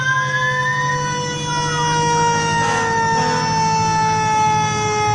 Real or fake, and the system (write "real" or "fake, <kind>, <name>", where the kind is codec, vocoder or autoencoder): real